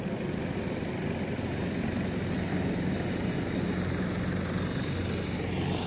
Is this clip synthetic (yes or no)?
no